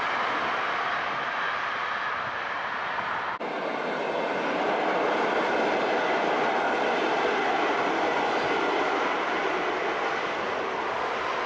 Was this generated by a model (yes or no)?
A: no